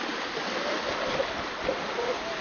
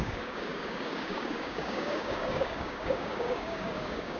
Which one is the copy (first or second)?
second